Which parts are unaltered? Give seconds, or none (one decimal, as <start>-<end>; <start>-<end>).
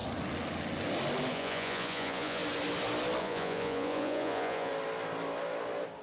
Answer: 0.0-1.3; 2.4-3.2; 4.7-6.0